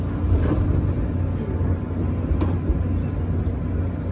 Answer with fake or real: real